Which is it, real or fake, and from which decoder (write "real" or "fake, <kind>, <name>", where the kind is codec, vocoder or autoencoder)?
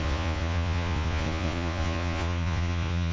fake, vocoder, Vocos